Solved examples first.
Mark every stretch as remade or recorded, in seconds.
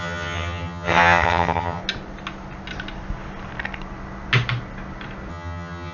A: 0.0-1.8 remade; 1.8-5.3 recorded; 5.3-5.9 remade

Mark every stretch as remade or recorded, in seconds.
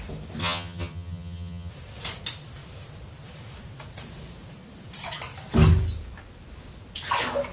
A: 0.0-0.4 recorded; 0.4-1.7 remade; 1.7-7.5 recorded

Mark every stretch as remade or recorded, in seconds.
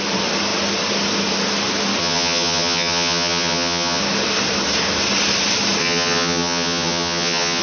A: 0.0-2.0 recorded; 2.0-4.0 remade; 4.0-5.8 recorded; 5.8-7.6 remade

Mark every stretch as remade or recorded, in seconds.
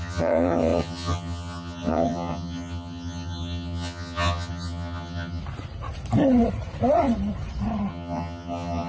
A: 0.0-5.4 remade; 5.4-7.9 recorded; 7.9-8.9 remade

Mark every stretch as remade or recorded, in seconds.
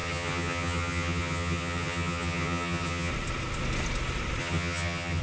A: 0.0-3.1 remade; 3.1-4.4 recorded; 4.4-5.2 remade